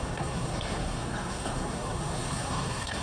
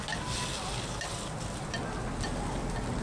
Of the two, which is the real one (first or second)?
second